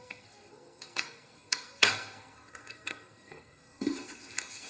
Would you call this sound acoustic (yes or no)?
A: no